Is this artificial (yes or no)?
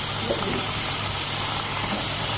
yes